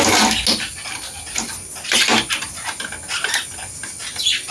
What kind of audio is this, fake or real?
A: real